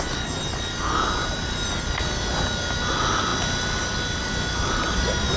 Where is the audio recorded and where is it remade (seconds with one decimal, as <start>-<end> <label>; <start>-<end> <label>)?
0.0-1.2 recorded; 1.2-1.8 remade; 1.8-5.4 recorded